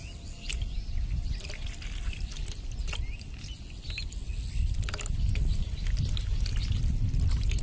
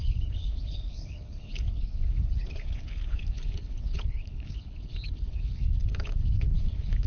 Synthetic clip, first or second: second